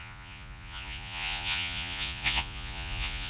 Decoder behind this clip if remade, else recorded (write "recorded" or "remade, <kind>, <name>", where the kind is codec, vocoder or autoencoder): remade, vocoder, Vocos